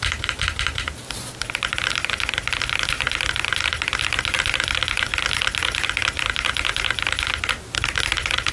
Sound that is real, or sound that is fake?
real